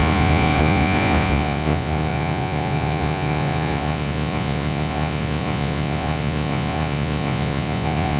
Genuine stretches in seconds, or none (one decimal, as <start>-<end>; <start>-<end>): none